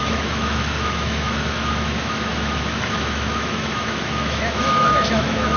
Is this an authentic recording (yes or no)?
no